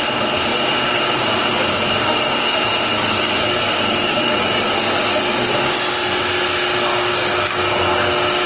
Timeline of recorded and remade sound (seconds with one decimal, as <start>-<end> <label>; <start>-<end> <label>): 0.0-0.5 recorded; 0.5-5.6 remade; 5.6-6.9 recorded; 6.9-7.6 remade; 7.6-8.5 recorded